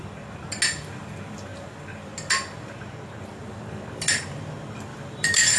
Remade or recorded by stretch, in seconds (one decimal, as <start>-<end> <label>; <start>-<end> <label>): 0.0-4.9 recorded; 4.9-5.6 remade